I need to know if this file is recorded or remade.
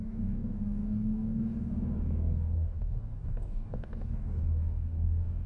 remade